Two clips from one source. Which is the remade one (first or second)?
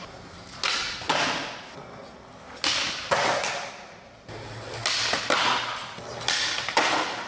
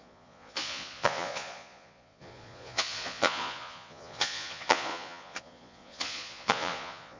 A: second